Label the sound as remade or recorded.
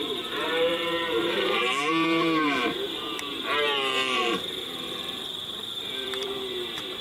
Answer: remade